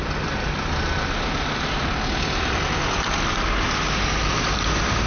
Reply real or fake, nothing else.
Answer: real